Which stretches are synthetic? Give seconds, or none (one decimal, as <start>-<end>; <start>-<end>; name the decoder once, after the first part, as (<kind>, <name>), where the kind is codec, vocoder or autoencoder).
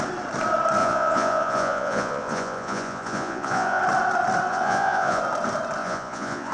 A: 0.8-3.8 (vocoder, Vocos); 4.5-5.2; 5.8-6.5